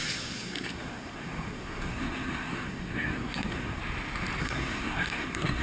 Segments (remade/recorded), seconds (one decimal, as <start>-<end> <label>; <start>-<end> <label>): 0.0-3.8 remade; 3.8-4.4 recorded; 4.4-5.6 remade